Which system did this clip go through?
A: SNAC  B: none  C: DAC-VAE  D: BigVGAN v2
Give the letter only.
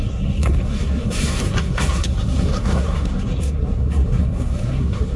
A